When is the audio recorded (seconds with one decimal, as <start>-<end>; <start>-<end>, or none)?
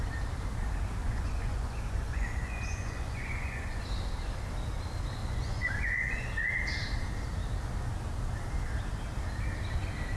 0.0-1.0; 3.8-5.2; 6.3-10.2